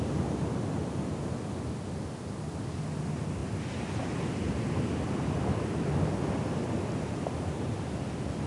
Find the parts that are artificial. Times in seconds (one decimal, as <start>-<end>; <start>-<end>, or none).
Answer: none